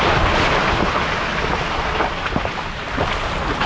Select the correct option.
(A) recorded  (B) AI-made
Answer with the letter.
A